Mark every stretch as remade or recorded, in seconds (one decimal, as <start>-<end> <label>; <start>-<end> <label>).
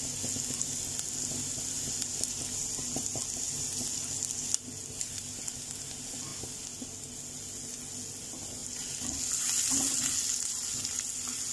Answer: 0.0-11.5 recorded